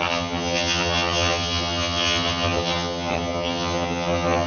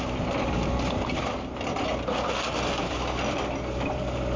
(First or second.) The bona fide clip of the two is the second